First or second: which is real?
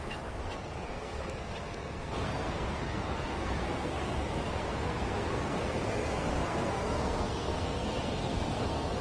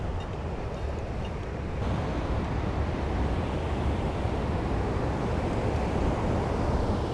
second